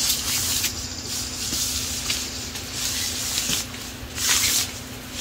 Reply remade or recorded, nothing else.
recorded